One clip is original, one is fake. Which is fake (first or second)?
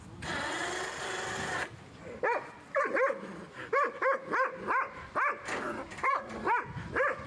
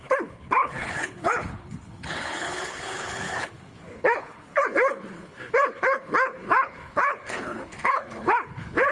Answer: second